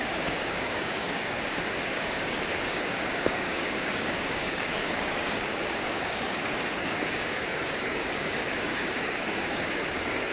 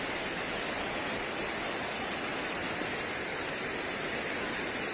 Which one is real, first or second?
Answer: second